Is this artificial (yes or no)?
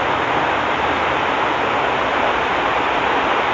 no